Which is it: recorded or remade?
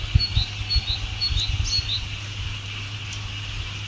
recorded